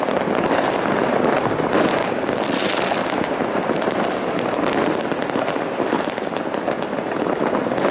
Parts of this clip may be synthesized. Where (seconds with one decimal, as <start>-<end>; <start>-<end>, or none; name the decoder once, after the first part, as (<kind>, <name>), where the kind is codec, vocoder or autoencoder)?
2.0-6.4 (vocoder, BigVGAN v2)